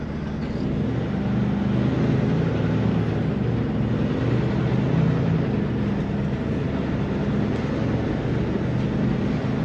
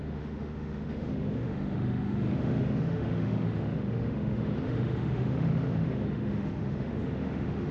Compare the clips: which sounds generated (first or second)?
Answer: second